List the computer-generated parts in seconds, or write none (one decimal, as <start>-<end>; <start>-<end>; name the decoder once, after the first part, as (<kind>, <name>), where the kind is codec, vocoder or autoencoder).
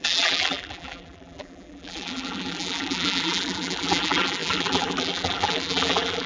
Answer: 0.0-6.3 (vocoder, BigVGAN v2)